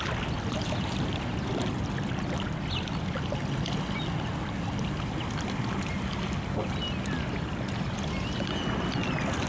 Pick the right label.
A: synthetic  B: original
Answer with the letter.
B